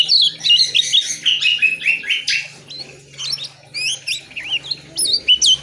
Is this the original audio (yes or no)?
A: yes